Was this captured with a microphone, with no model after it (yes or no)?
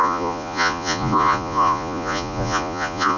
no